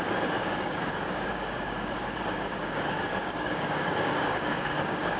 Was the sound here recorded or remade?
remade